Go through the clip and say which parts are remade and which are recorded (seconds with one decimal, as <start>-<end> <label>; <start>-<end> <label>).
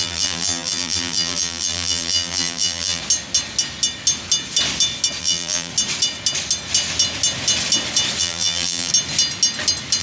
0.0-3.0 remade; 3.0-5.2 recorded; 5.2-5.7 remade; 5.7-8.2 recorded; 8.2-8.9 remade; 8.9-10.0 recorded